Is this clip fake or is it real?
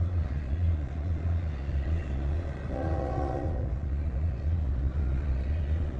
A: fake